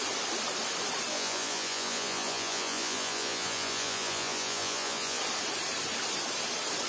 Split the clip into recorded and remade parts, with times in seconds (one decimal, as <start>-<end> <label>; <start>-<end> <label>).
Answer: 0.0-1.1 recorded; 1.1-5.2 remade; 5.2-6.9 recorded